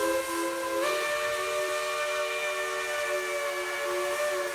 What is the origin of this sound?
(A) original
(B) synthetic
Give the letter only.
A